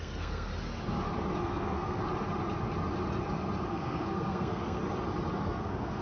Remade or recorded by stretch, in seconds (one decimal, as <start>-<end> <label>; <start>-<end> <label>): 0.0-0.5 remade; 0.5-1.4 recorded; 1.4-2.0 remade; 2.0-3.7 recorded; 3.7-4.8 remade; 4.8-5.4 recorded; 5.4-6.0 remade